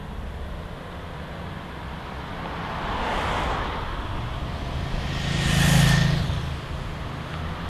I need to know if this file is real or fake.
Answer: real